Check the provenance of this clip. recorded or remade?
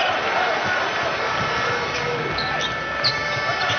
recorded